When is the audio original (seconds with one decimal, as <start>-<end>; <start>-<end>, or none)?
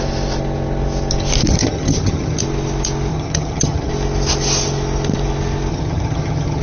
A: 0.0-1.6; 2.4-3.1; 3.9-5.7